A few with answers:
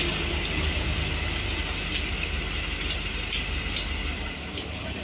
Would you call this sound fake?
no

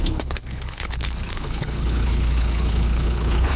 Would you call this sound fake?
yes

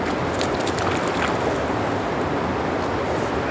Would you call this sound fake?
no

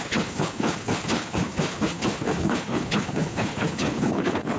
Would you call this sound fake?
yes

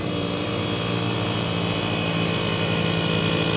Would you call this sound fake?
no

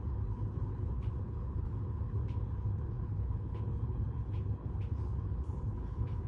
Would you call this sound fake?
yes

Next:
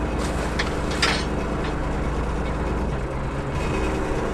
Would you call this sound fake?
no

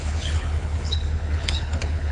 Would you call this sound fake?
yes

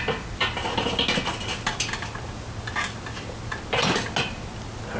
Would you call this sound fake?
no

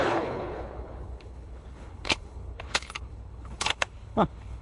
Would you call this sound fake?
yes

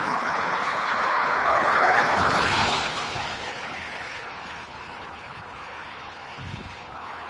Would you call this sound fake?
yes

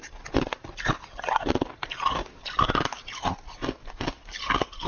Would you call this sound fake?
no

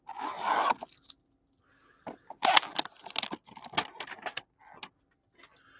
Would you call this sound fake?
no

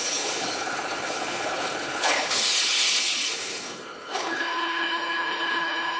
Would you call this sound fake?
yes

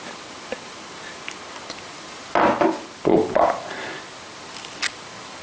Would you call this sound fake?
no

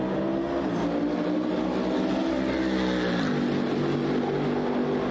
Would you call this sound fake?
no